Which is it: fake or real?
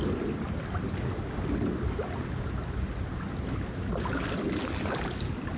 real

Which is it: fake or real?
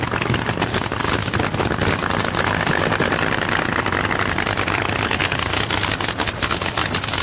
real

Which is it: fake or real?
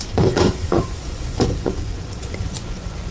fake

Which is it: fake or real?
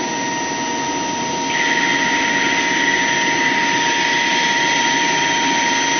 real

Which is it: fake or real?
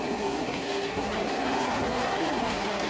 fake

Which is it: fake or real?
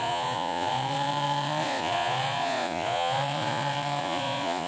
fake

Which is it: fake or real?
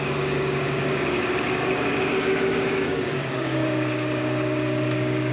fake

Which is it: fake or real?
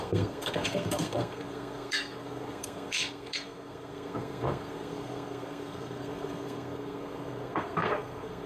fake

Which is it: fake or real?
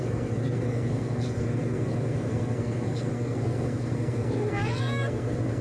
fake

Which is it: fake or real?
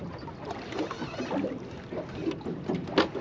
real